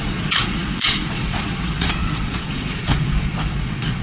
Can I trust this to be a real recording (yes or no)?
no